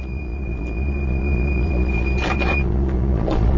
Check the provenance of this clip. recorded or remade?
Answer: remade